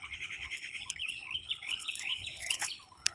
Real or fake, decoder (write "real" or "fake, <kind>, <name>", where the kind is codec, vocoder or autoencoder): fake, codec, HILCodec